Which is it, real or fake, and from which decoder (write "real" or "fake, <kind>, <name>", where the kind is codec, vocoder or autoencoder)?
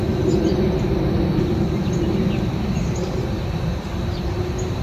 real